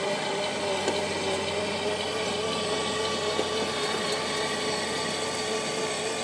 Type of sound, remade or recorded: recorded